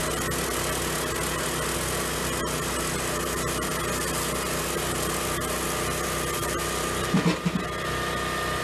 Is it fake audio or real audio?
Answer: real